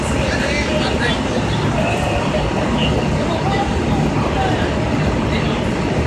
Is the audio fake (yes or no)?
no